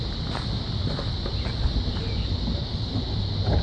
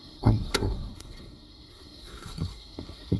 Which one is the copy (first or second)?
second